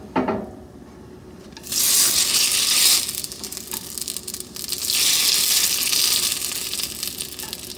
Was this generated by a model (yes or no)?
no